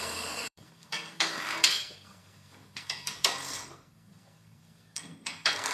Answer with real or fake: fake